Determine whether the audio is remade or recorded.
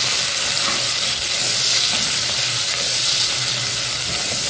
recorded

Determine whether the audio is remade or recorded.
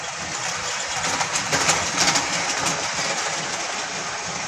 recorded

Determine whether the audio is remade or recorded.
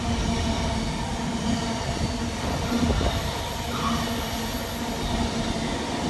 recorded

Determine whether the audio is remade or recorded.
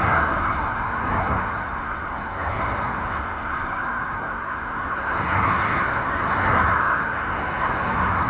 remade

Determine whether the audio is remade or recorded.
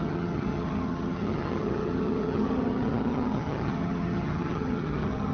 remade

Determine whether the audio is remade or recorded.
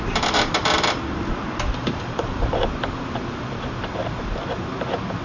remade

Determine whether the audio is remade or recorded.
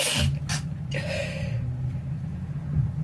recorded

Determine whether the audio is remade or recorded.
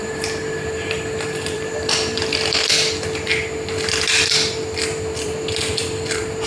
remade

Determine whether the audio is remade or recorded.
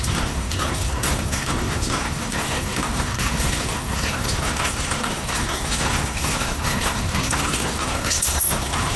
remade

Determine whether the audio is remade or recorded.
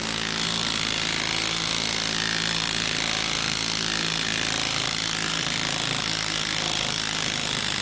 recorded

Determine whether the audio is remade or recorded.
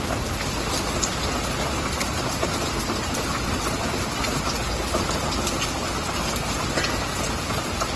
recorded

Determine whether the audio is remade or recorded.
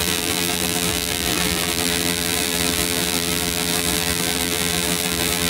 remade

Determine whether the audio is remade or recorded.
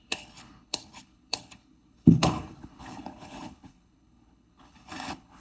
remade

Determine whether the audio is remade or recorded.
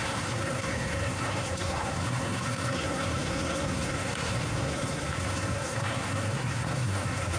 remade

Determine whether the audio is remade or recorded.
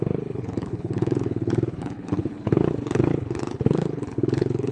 remade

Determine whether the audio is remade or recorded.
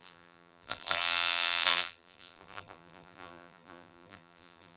remade